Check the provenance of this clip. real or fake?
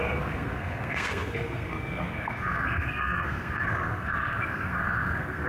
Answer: fake